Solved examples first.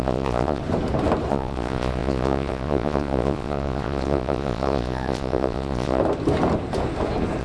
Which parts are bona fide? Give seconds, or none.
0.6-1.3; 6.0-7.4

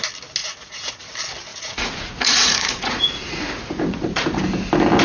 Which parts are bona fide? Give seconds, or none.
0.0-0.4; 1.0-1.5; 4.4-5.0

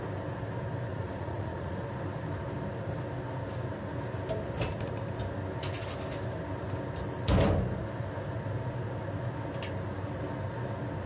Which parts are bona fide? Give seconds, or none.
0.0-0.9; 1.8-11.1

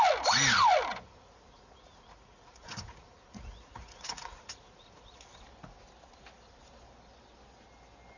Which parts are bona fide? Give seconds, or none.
0.0-0.9; 5.2-8.2